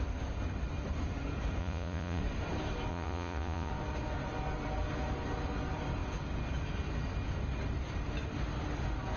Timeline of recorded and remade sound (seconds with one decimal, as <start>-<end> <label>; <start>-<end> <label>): 0.0-1.6 recorded; 1.6-2.2 remade; 2.2-2.9 recorded; 2.9-3.7 remade; 3.7-9.2 recorded